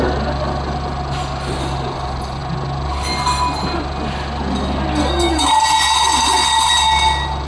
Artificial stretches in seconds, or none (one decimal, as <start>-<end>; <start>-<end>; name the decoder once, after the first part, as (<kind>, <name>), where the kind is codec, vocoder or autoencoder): 5.0-5.5 (codec, SNAC)